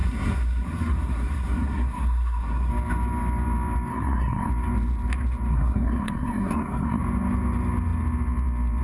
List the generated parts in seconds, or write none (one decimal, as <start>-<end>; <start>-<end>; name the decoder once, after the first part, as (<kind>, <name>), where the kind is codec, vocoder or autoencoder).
0.0-2.7 (codec, SNAC); 3.9-4.5; 5.5-7.0